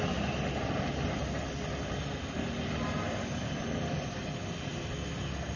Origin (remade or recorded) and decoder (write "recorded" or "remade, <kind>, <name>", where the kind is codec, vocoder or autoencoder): recorded